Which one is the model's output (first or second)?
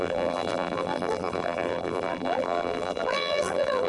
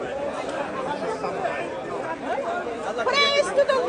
first